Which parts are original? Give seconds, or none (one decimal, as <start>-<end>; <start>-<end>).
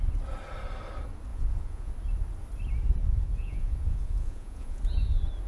0.0-1.3; 1.9-3.0; 4.8-5.5